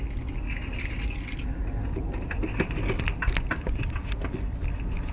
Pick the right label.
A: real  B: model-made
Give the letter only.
A